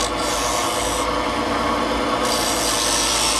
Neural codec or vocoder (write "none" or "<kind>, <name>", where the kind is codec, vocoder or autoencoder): none